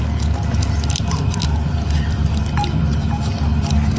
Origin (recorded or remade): recorded